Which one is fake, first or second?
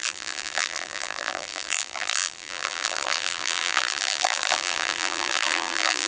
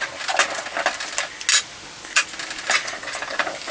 first